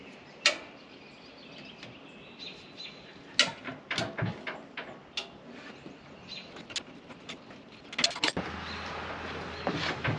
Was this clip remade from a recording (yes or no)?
no